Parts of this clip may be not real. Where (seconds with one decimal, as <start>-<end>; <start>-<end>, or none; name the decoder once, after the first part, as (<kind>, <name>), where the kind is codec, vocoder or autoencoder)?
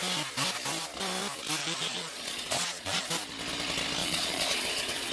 1.6-3.1 (vocoder, Vocos); 4.0-5.1